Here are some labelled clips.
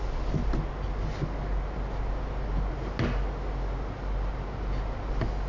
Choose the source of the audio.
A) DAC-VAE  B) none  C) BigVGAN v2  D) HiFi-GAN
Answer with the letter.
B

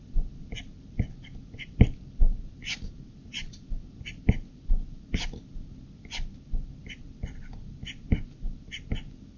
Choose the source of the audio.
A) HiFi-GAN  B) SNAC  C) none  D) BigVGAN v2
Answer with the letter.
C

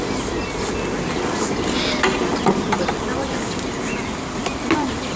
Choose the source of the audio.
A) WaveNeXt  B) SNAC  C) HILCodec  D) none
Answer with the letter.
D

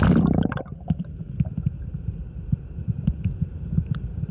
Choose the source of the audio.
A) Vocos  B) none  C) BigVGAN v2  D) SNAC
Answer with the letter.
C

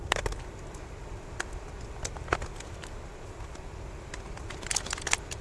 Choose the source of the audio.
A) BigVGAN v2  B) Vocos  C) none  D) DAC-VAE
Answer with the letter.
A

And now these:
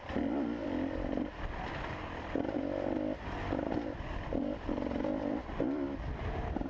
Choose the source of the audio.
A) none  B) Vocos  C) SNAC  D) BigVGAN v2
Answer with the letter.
D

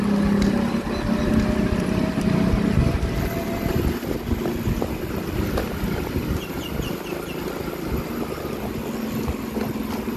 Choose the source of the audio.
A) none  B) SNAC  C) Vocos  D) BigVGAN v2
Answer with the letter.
A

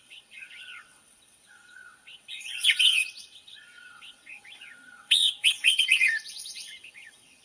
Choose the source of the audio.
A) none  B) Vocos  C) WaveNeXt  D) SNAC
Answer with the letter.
C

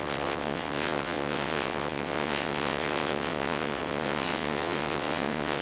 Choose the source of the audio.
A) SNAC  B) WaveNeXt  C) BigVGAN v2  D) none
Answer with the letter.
B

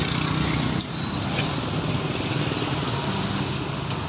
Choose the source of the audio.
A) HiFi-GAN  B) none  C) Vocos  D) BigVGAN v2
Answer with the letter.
B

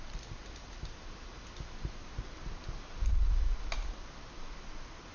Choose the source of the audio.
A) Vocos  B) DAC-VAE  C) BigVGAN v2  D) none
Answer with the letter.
D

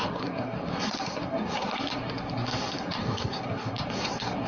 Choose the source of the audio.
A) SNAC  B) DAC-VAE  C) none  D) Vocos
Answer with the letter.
A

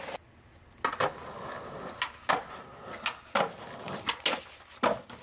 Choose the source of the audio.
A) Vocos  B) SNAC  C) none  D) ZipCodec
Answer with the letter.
C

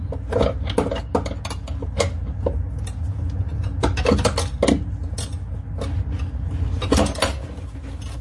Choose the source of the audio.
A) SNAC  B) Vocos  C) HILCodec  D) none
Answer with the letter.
D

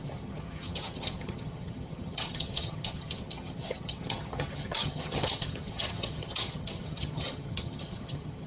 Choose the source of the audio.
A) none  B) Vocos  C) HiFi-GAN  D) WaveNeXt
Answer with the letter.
C